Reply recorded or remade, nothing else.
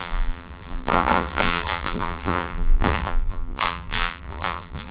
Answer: remade